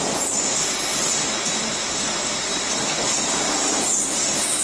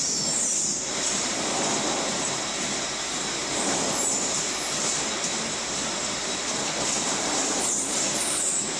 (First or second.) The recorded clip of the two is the first